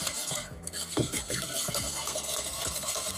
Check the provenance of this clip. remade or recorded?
remade